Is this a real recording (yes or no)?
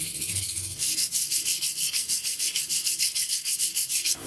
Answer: no